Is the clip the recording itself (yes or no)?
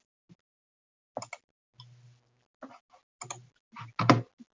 yes